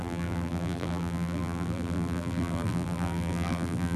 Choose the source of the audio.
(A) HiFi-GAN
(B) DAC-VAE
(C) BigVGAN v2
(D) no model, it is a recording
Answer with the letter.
C